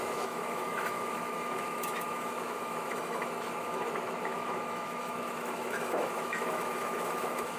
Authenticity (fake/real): fake